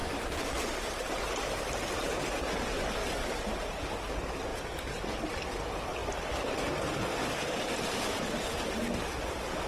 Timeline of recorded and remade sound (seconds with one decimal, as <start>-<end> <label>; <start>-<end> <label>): 0.0-1.2 remade; 1.2-3.0 recorded; 3.0-4.1 remade; 4.1-4.5 recorded; 4.5-5.0 remade; 5.0-9.7 recorded